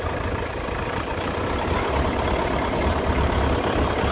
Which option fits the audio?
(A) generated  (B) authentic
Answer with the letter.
B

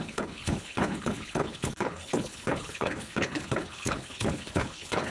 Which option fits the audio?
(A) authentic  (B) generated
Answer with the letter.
B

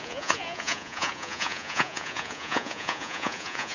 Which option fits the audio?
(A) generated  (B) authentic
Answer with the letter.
A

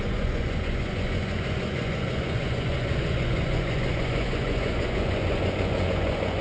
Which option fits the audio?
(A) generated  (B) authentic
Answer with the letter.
A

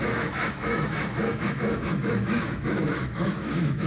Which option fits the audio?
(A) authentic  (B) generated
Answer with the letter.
B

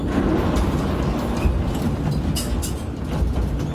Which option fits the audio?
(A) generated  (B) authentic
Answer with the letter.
B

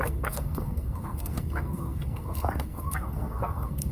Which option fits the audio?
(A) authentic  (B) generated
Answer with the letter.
B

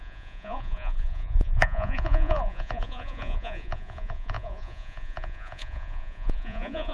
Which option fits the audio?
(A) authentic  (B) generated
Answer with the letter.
B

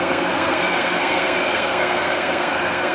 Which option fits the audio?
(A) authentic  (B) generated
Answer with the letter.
B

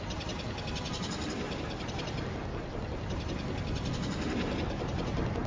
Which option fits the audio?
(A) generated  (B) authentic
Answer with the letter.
B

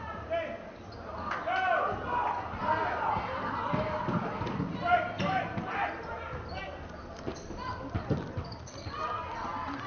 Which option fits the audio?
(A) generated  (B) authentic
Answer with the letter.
B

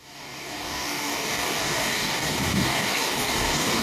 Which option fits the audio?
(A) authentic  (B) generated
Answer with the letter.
B